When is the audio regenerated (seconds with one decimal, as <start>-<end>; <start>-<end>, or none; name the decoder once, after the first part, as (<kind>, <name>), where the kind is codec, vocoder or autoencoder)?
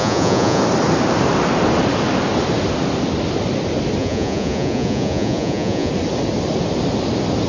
0.0-0.6 (vocoder, Vocos); 4.0-5.9